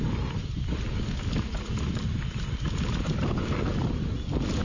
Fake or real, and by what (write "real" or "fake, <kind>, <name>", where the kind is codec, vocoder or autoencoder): real